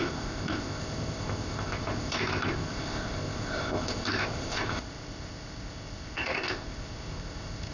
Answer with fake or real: fake